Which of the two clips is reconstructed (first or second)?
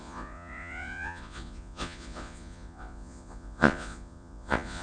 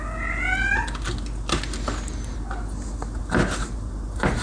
first